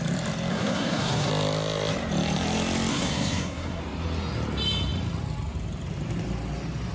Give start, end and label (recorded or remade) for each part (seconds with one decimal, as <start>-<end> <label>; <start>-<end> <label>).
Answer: 0.0-0.5 recorded; 0.5-1.3 remade; 1.3-2.9 recorded; 2.9-3.8 remade; 3.8-6.9 recorded